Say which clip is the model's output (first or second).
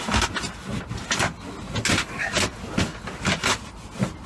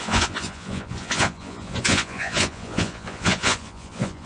second